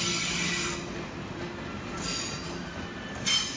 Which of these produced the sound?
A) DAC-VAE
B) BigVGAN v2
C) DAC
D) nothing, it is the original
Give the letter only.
D